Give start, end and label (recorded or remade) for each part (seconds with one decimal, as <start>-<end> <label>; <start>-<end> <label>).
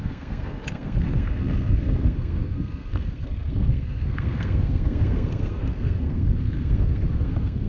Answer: 0.0-7.7 remade